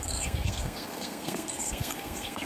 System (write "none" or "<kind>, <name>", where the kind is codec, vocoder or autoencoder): codec, SNAC